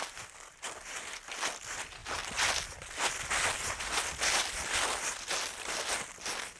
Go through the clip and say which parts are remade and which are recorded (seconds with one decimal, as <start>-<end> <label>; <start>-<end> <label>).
0.0-6.6 recorded